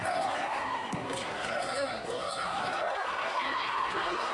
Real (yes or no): no